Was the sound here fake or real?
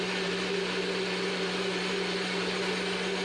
real